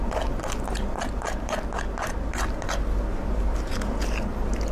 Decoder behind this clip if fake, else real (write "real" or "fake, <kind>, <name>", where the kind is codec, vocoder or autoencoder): real